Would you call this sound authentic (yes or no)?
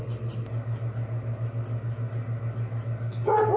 yes